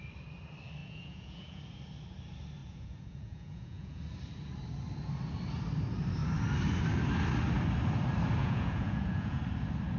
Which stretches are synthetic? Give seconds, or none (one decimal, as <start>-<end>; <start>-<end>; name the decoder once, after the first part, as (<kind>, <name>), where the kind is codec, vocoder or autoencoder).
0.8-1.6 (vocoder, Vocos); 2.6-4.0; 8.4-9.4